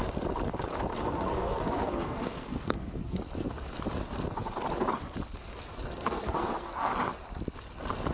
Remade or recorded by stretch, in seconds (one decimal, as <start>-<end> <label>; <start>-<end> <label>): 0.0-0.9 recorded; 0.9-3.2 remade; 3.2-6.0 recorded; 6.0-6.9 remade; 6.9-8.1 recorded